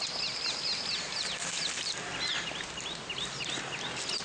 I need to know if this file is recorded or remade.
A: recorded